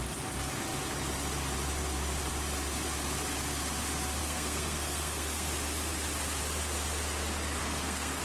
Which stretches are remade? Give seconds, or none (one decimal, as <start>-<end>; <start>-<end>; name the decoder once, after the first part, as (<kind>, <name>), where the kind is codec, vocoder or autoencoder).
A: 4.2-5.5 (codec, SNAC); 7.6-8.2